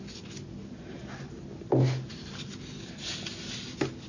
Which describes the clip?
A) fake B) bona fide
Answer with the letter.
B